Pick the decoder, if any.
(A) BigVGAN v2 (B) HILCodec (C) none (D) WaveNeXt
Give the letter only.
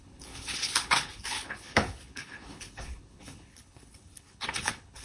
B